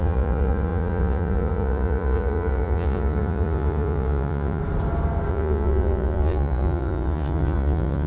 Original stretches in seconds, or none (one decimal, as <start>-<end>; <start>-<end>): 4.6-5.3